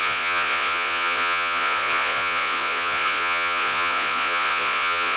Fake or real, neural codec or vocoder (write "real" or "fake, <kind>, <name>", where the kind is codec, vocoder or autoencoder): fake, vocoder, Vocos